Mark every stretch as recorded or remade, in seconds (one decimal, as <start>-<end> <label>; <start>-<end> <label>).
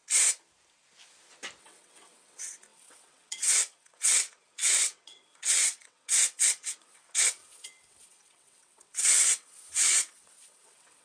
0.0-1.6 recorded; 1.6-11.0 remade